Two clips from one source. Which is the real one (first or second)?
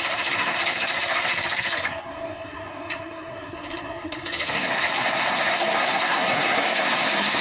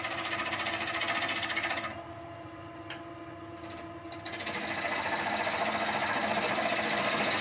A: second